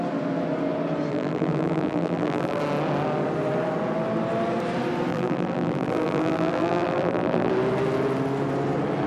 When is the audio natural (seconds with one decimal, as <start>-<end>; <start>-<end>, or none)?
0.0-1.1; 2.6-5.1; 7.5-9.1